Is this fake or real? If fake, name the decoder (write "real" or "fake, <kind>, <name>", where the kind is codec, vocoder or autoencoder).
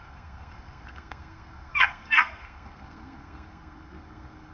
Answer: fake, codec, SNAC